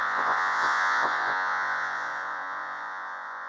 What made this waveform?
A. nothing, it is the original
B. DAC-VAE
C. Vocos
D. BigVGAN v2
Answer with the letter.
C